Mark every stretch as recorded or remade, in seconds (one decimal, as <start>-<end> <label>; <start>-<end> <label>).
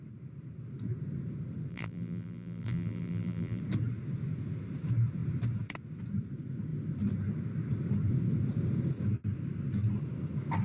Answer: 0.0-1.7 recorded; 1.7-3.6 remade; 3.6-10.6 recorded